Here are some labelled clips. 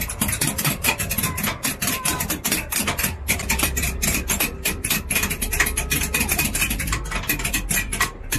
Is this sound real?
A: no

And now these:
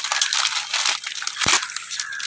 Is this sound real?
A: yes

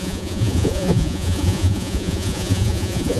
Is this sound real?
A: no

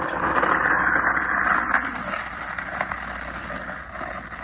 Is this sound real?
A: yes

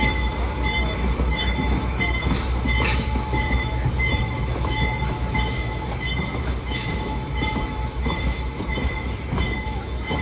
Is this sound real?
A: no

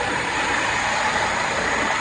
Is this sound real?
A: no